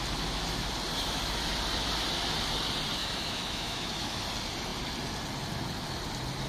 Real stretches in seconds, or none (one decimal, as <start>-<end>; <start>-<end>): 0.0-3.0; 4.2-6.5